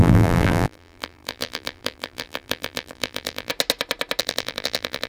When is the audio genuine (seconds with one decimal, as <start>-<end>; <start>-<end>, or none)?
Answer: 3.5-4.2